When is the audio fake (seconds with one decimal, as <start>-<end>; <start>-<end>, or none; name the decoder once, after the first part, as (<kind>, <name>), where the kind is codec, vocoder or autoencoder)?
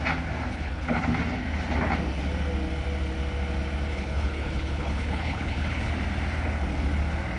0.5-1.0 (codec, HILCodec); 3.9-5.9